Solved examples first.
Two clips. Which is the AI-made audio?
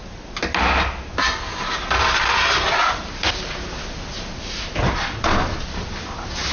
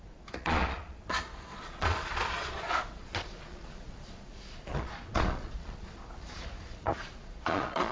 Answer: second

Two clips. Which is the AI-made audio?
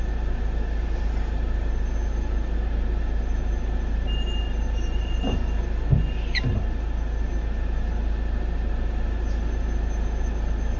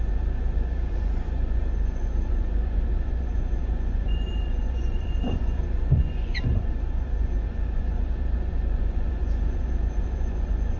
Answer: second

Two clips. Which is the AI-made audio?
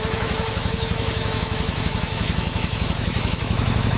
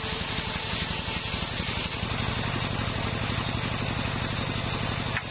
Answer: first